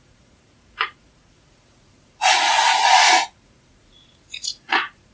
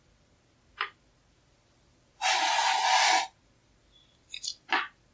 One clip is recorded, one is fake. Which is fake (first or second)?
first